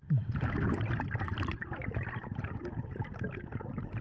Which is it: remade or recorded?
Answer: recorded